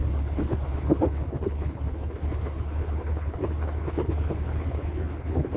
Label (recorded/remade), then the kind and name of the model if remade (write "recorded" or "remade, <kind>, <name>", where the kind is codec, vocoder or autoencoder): remade, codec, HILCodec